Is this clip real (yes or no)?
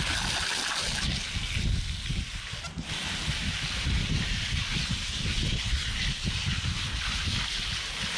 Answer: yes